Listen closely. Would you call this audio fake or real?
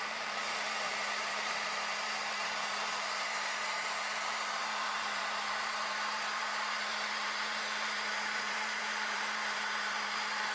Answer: fake